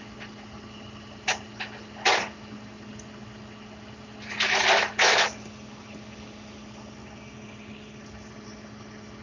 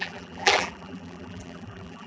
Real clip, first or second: first